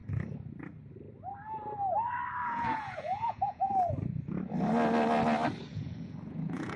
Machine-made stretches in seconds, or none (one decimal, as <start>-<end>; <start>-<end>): 2.4-3.9; 5.7-6.8